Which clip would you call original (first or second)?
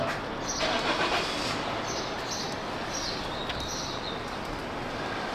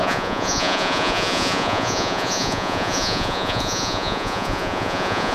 first